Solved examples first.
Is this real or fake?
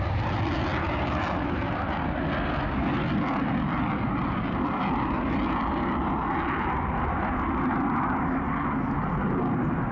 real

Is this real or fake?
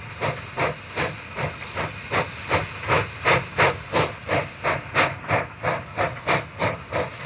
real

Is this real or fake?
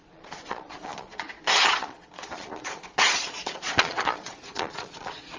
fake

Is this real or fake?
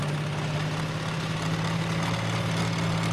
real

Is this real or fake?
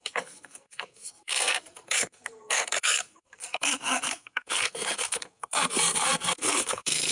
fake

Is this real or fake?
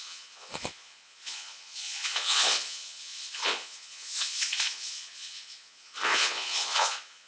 fake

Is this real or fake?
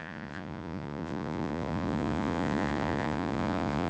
fake